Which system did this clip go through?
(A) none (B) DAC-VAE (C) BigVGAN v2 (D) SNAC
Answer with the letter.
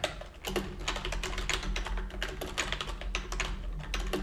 A